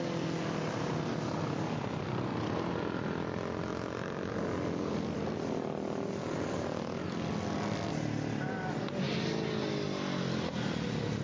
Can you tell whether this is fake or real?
real